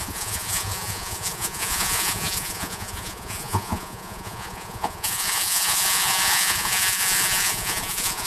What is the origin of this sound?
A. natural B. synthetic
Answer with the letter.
B